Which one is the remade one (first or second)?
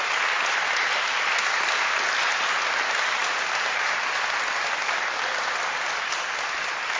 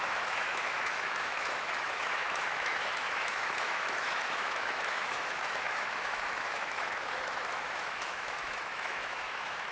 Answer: second